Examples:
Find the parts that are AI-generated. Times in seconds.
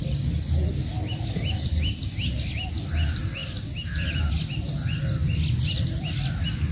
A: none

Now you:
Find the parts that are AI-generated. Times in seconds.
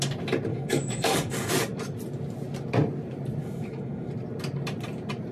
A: 0.5-1.5 (codec, DAC); 3.4-4.1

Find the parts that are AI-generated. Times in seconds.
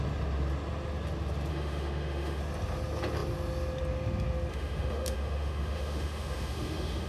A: 1.5-2.4 (autoencoder, DAC-VAE); 4.5-7.1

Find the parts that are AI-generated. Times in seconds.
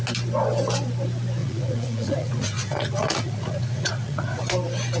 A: 1.4-4.4 (vocoder, Vocos)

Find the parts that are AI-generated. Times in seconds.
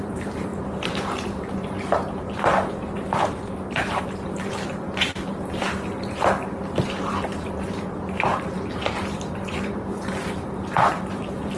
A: 0.0-5.6 (vocoder, BigVGAN v2); 7.1-11.6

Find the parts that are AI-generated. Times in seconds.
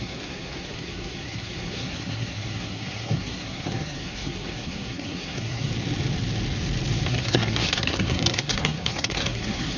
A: 0.0-5.7 (codec, SNAC); 7.1-9.8